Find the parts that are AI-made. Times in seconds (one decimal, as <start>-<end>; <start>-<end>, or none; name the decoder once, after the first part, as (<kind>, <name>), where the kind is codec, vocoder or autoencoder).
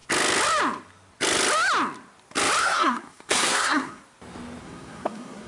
2.6-4.0 (codec, SNAC); 4.6-5.5